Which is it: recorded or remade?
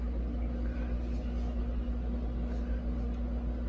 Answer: recorded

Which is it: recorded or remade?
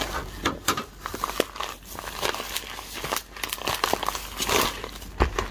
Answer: recorded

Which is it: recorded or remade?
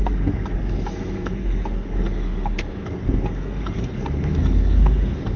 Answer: remade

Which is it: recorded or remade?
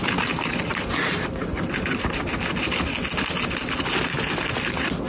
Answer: recorded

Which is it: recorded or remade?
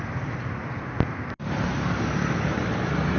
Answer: recorded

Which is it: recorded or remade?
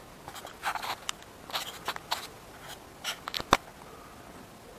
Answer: recorded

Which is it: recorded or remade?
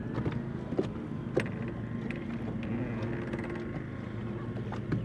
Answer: recorded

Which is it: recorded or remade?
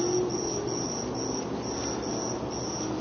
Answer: recorded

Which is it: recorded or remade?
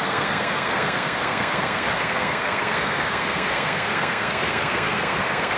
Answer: remade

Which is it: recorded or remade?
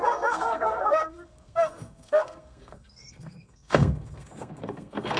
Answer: remade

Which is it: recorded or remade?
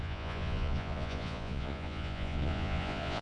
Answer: remade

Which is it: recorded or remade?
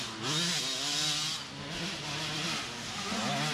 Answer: recorded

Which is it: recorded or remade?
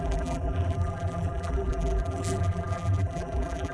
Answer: remade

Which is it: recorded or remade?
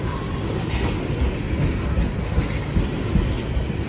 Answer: recorded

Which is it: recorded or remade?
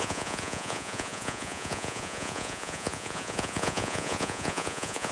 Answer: remade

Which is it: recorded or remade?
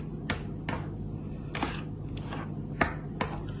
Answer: recorded